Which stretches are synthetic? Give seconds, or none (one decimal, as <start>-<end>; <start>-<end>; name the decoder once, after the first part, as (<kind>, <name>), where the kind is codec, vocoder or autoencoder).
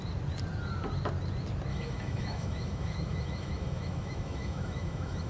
1.7-5.3 (autoencoder, DAC-VAE)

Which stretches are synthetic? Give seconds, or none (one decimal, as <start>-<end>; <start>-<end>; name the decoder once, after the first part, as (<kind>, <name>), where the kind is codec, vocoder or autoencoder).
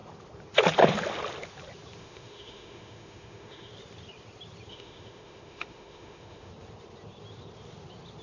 2.0-3.7 (autoencoder, DAC-VAE); 4.7-6.5